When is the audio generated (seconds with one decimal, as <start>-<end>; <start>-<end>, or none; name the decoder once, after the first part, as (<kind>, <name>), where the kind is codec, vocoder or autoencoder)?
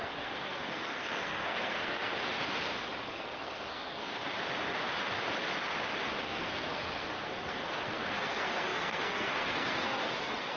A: 0.0-2.1 (codec, SNAC); 3.1-4.2; 6.2-10.6